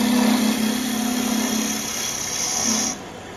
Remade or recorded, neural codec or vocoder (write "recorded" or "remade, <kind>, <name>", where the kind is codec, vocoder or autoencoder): recorded